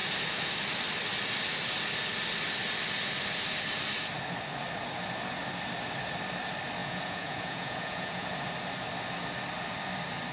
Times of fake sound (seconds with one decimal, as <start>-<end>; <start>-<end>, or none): 6.8-8.3